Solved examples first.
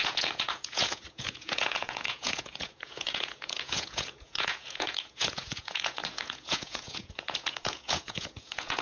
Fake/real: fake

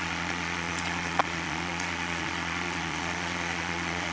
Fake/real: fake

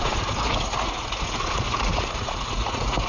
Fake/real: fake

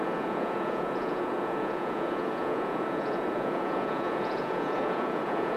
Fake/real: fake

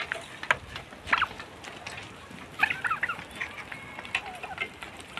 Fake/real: real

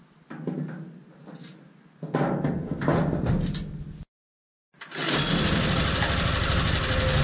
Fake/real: real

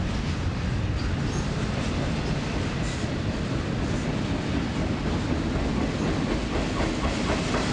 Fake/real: real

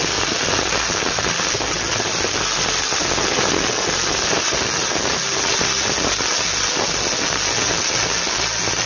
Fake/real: real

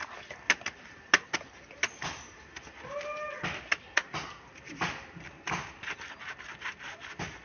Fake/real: real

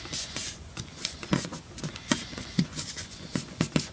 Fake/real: fake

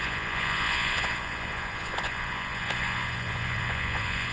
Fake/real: fake